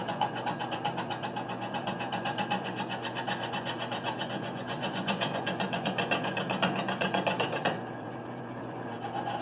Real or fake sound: fake